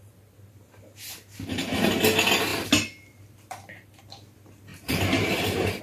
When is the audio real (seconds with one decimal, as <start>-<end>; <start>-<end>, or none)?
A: 0.0-2.5; 4.0-4.7